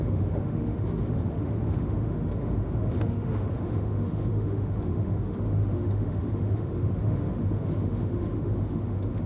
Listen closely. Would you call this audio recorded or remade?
remade